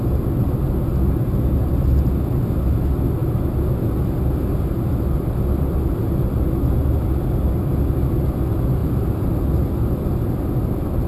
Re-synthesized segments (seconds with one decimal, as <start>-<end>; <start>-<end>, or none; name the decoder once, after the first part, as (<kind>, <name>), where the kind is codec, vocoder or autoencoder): 8.8-9.4 (vocoder, BigVGAN v2)